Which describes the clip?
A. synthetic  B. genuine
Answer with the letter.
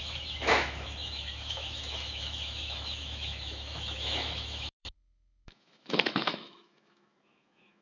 A